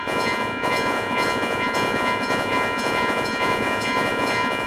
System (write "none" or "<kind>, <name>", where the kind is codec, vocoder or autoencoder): vocoder, Vocos